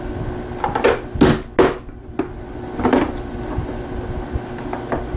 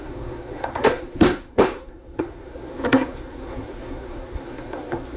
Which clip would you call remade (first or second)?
second